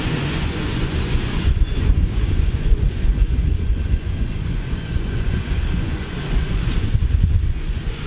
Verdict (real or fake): fake